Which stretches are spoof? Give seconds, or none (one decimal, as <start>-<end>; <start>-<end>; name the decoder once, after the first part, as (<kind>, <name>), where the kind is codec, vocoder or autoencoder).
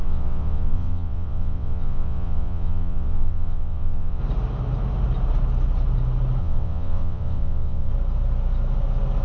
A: 0.0-4.2 (vocoder, WaveNeXt); 6.4-7.9